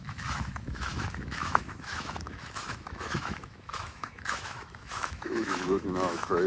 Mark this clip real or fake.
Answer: fake